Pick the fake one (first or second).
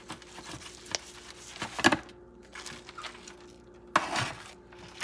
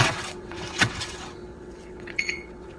second